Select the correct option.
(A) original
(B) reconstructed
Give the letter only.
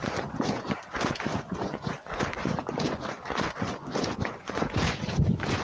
B